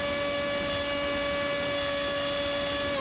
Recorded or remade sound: recorded